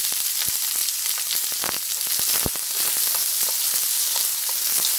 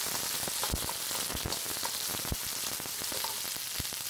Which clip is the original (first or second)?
second